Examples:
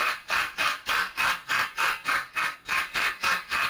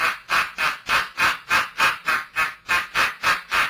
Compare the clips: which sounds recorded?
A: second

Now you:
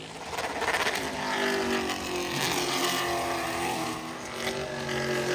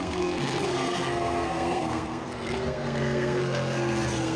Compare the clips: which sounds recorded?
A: first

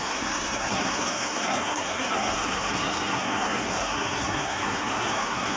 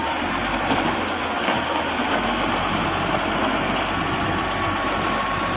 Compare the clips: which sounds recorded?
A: second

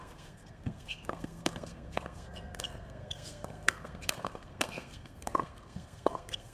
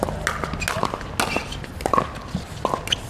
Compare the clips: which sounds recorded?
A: second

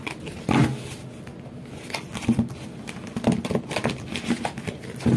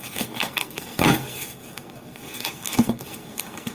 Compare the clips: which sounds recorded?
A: first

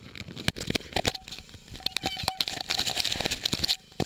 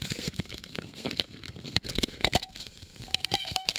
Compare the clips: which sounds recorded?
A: first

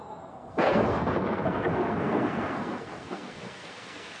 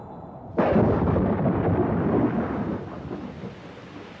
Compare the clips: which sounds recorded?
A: second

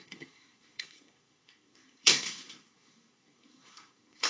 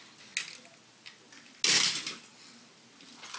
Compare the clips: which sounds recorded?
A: second